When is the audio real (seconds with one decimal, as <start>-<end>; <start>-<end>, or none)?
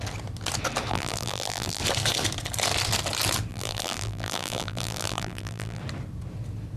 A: 0.0-0.9; 1.8-3.5; 5.8-6.8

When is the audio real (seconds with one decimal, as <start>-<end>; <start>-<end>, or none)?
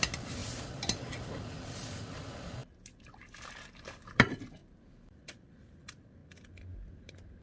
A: 6.2-7.4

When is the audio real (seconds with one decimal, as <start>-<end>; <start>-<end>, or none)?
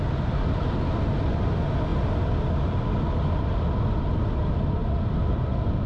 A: 0.0-5.9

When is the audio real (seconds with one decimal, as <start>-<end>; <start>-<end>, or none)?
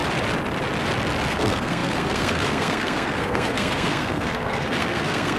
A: 0.0-1.3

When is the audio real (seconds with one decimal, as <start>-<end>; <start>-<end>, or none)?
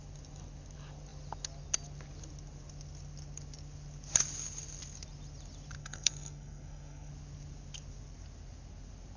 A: 0.0-5.8; 7.1-9.2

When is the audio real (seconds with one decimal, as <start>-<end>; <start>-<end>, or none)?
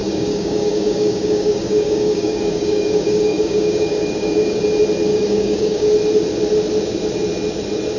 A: 4.6-5.1; 5.9-8.0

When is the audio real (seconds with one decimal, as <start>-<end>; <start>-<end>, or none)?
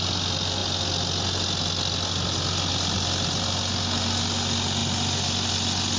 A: 0.0-6.0